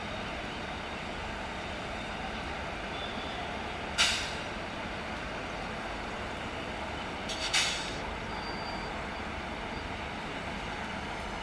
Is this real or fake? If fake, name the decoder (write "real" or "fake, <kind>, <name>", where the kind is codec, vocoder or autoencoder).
real